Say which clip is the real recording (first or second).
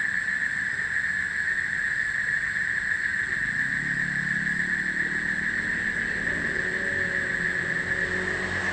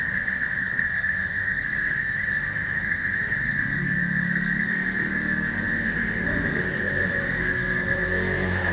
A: first